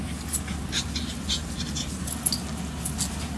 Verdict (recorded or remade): recorded